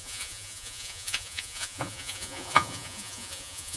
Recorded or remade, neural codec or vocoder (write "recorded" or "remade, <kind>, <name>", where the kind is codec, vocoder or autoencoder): remade, vocoder, Vocos